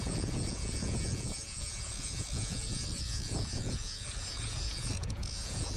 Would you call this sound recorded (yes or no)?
no